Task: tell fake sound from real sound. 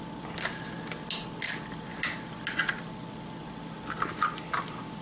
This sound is real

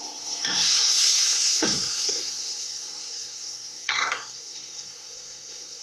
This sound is fake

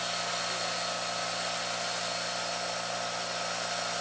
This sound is real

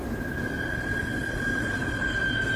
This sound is real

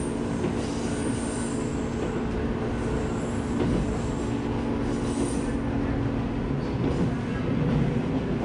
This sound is real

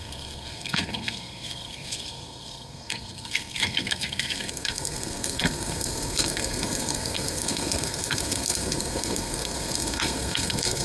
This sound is fake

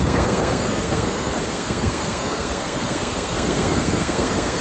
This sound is fake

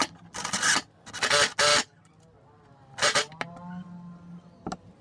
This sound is real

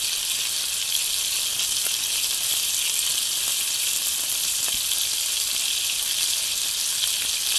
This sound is real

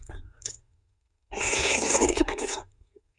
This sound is fake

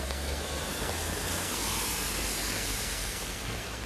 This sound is fake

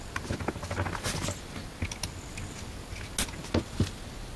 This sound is real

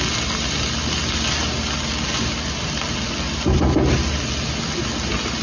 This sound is real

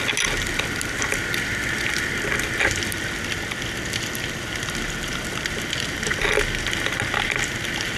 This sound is real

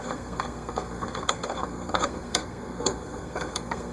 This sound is fake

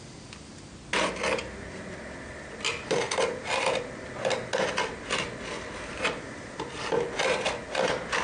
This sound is real